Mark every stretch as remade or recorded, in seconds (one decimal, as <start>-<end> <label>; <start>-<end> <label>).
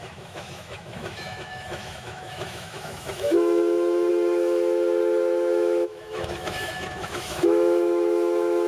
0.0-8.7 remade